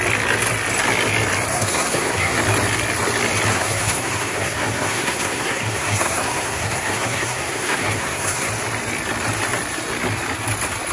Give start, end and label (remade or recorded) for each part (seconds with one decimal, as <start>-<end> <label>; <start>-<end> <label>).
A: 0.0-1.5 recorded; 1.5-2.4 remade; 2.4-3.5 recorded; 3.5-8.5 remade; 8.5-10.9 recorded